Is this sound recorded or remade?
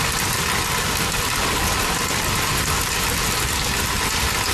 recorded